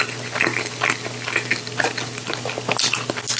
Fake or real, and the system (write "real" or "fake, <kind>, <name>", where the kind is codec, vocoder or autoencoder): real